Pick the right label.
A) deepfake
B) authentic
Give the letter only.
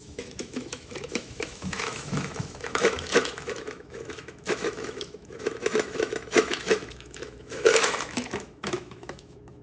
A